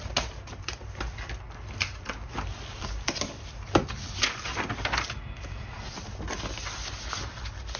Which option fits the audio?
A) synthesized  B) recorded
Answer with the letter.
B